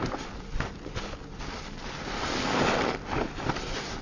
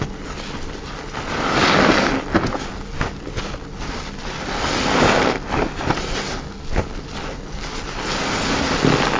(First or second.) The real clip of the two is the second